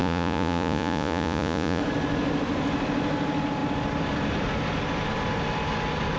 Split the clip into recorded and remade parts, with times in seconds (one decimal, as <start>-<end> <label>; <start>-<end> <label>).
0.0-1.8 remade; 1.8-6.2 recorded